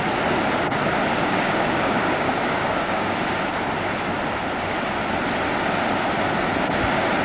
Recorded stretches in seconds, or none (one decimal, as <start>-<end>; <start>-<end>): 0.0-1.1; 3.2-7.2